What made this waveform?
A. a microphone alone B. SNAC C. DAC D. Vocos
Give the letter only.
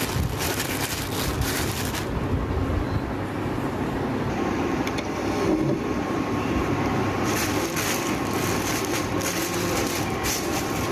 A